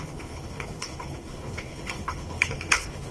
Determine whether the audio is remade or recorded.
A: remade